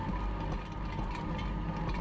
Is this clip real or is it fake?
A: real